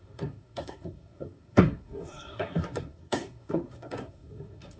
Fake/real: fake